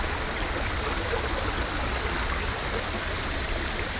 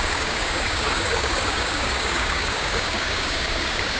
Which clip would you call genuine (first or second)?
first